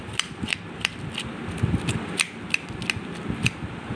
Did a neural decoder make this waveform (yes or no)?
no